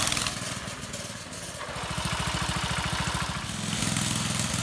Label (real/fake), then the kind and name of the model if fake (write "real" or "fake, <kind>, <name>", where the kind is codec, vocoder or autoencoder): real